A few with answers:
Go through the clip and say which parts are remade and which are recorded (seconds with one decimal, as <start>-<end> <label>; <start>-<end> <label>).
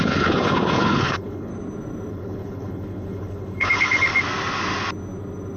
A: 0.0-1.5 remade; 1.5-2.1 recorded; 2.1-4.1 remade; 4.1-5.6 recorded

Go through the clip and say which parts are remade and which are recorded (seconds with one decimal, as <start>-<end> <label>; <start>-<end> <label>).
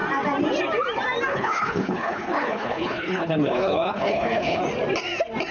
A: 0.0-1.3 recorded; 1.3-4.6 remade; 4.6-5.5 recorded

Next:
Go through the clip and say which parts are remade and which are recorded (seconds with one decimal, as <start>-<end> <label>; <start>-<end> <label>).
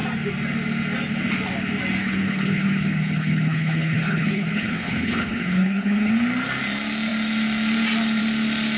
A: 0.0-2.0 recorded; 2.0-6.1 remade; 6.1-8.8 recorded